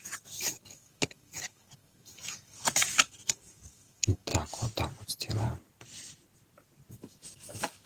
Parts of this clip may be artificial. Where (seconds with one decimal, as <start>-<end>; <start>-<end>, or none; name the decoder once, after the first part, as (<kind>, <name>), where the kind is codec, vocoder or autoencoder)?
0.0-4.3 (codec, DAC); 6.9-7.9